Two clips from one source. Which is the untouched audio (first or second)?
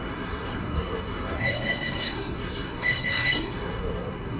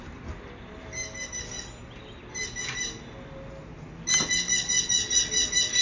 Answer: second